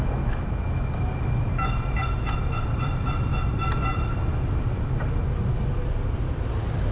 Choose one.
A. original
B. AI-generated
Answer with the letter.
A